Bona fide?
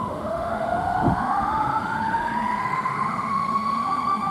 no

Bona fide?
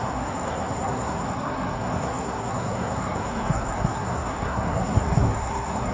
no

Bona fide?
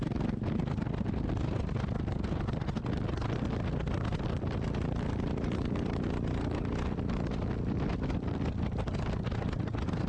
yes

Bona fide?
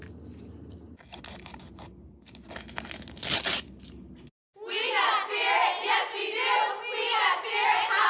yes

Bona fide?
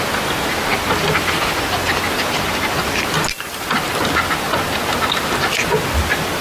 yes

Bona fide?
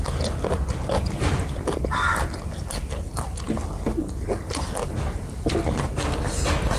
yes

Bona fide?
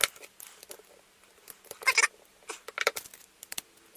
yes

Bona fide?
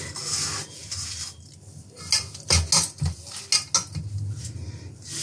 yes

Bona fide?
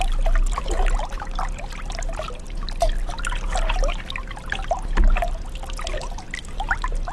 yes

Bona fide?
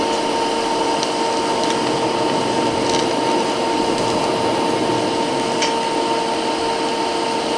yes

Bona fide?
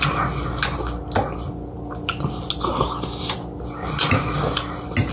yes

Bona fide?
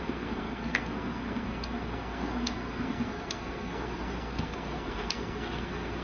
no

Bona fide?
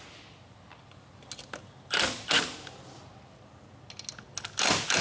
yes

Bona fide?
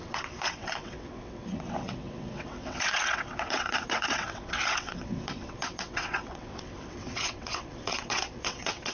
no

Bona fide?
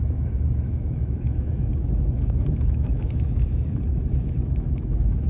no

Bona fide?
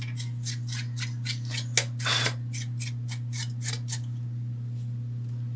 yes